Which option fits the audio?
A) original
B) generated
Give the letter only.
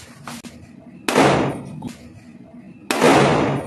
A